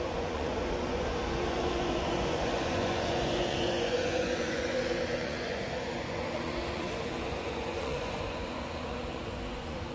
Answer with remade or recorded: remade